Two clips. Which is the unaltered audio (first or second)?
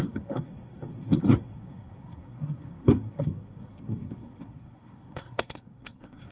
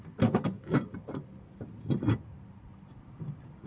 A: second